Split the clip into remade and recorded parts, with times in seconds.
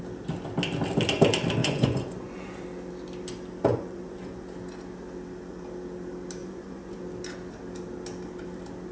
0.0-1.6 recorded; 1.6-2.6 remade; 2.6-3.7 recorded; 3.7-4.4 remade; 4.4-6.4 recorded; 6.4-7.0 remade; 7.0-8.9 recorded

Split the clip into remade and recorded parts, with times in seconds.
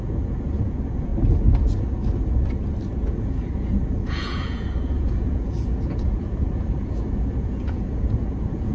0.0-1.1 remade; 1.1-2.9 recorded; 2.9-8.7 remade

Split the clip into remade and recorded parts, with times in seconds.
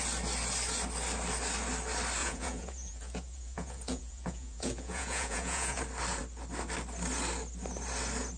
0.0-2.2 recorded; 2.2-5.8 remade; 5.8-8.4 recorded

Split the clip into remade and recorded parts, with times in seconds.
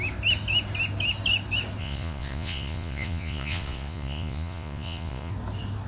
0.0-1.8 recorded; 1.8-5.3 remade; 5.3-5.9 recorded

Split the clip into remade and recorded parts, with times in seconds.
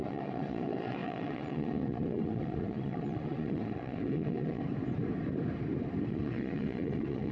0.0-4.6 remade; 4.6-6.0 recorded; 6.0-7.3 remade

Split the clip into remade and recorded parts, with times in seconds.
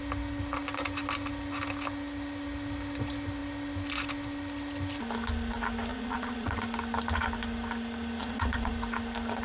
0.0-5.9 recorded; 5.9-6.6 remade; 6.6-8.2 recorded; 8.2-8.7 remade; 8.7-9.4 recorded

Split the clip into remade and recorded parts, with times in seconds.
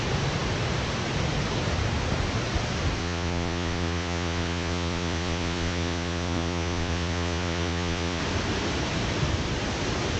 0.0-3.0 recorded; 3.0-8.2 remade; 8.2-10.2 recorded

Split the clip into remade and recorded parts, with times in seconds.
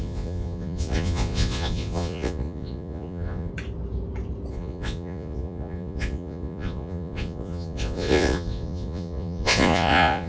0.0-3.5 remade; 3.5-4.5 recorded; 4.5-10.3 remade